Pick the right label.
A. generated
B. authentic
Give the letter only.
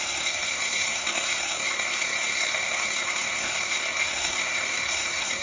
A